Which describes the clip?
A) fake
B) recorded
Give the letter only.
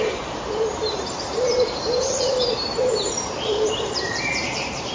A